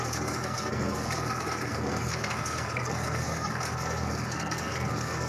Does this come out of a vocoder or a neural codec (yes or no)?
yes